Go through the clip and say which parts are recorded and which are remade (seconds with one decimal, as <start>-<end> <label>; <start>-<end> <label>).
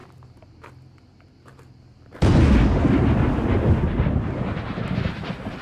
0.0-5.6 recorded